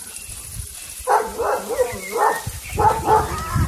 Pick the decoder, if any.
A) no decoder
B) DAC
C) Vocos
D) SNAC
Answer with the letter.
A